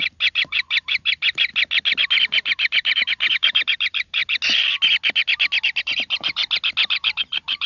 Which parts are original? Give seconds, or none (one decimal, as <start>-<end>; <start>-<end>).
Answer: 1.5-2.2; 4.2-5.8; 6.4-6.9